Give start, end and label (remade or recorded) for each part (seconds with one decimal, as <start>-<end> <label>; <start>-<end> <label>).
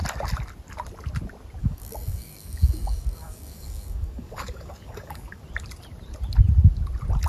0.0-1.6 recorded; 1.6-5.4 remade; 5.4-7.3 recorded